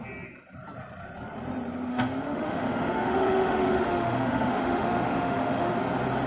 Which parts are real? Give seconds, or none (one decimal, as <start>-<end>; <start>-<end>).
0.0-1.9; 5.7-6.3